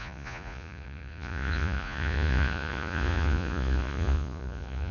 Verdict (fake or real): fake